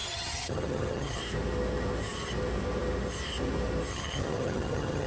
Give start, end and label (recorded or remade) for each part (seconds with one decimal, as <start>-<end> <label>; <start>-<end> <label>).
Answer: 0.0-1.2 remade; 1.2-3.9 recorded; 3.9-5.1 remade